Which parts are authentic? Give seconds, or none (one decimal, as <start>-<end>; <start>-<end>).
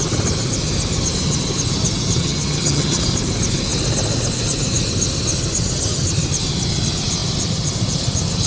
0.0-2.2; 3.0-8.5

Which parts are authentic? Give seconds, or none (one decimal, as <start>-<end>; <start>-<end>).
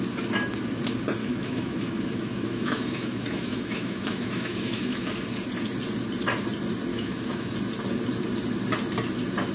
0.0-1.2; 5.1-6.9; 7.5-9.5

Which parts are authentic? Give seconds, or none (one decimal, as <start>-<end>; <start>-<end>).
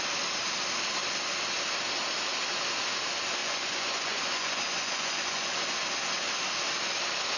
0.0-3.4; 5.6-7.4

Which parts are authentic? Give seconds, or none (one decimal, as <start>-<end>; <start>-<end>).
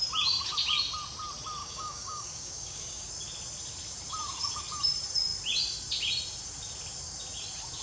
0.0-1.6; 3.1-7.8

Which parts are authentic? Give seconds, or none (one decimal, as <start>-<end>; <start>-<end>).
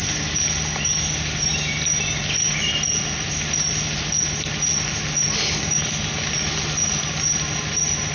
0.0-8.1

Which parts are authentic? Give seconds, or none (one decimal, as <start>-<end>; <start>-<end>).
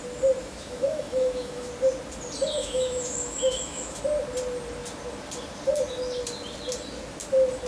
0.0-0.4; 1.7-2.6; 4.0-7.7